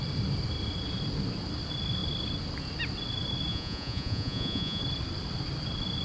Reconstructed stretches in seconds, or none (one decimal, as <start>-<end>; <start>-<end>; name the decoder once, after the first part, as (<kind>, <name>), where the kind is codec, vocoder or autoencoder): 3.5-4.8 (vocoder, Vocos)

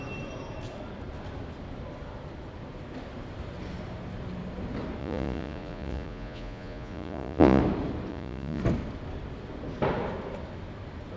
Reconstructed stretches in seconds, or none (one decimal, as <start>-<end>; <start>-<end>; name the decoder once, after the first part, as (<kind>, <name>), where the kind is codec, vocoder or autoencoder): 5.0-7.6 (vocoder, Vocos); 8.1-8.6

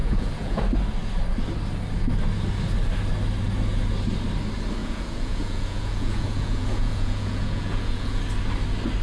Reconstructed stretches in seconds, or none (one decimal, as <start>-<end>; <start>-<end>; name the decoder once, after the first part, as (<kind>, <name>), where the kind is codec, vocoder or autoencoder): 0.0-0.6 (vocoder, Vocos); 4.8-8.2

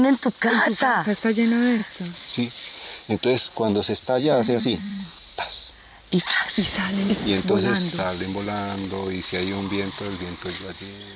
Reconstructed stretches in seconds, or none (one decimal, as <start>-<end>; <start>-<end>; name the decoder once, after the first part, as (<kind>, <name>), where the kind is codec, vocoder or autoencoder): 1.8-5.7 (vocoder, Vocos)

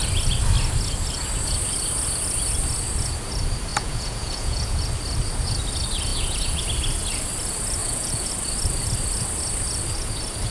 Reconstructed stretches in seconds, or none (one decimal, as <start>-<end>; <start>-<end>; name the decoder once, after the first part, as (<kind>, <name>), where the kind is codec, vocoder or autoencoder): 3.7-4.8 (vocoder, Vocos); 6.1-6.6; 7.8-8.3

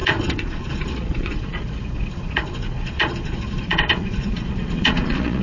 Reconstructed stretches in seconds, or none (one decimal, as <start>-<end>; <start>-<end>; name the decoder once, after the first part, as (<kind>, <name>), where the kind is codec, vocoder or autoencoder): 0.0-5.4 (vocoder, Vocos)

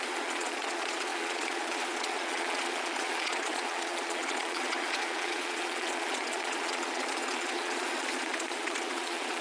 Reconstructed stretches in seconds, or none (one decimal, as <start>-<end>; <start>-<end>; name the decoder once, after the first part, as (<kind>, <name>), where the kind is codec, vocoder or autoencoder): 0.0-9.4 (vocoder, Vocos)

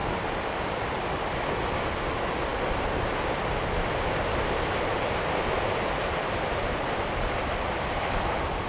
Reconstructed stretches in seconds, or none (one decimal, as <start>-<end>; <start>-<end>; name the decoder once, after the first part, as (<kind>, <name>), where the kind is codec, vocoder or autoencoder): none